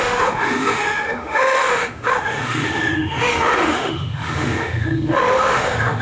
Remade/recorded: remade